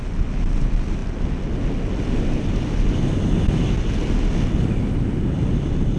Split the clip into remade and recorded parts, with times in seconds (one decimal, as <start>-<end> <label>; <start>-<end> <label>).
0.0-6.0 recorded